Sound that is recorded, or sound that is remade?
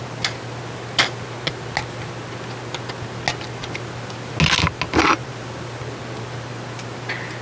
recorded